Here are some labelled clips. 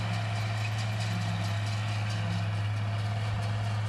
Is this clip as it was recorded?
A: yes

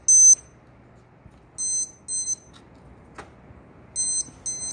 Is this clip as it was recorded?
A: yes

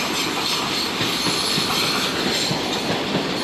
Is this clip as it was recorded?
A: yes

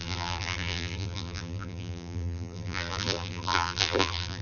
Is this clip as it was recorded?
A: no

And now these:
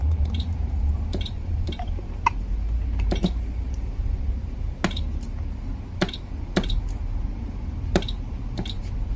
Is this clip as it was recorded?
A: no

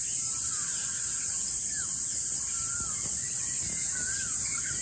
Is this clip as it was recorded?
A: no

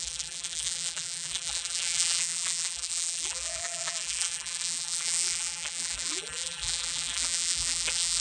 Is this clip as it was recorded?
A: no